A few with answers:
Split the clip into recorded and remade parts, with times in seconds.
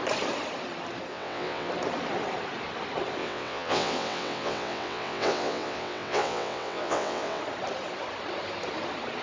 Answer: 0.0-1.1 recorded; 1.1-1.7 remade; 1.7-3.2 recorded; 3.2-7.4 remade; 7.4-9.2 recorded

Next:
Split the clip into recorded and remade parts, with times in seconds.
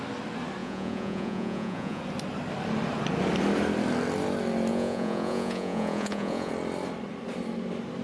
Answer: 0.0-0.6 recorded; 0.6-2.0 remade; 2.0-4.7 recorded; 4.7-6.5 remade; 6.5-8.0 recorded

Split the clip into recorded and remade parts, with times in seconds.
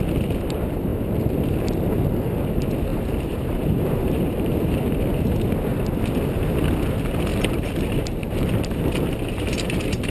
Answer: 0.0-0.9 recorded; 0.9-2.0 remade; 2.0-2.9 recorded; 2.9-4.8 remade; 4.8-7.3 recorded; 7.3-10.1 remade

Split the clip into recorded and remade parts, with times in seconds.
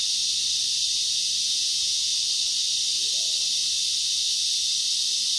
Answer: 0.0-1.4 recorded; 1.4-2.1 remade; 2.1-5.4 recorded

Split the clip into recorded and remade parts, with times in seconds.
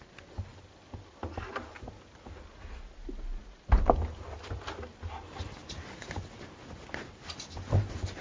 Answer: 0.0-8.2 recorded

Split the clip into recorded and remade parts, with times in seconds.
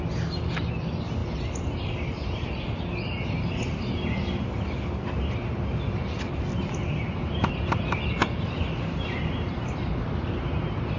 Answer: 0.0-11.0 recorded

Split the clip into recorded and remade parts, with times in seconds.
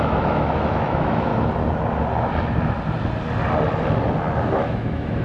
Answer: 0.0-1.3 remade; 1.3-4.4 recorded; 4.4-5.2 remade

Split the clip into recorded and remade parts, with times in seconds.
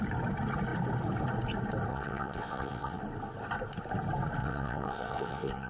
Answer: 0.0-1.9 recorded; 1.9-3.0 remade; 3.0-4.4 recorded; 4.4-5.7 remade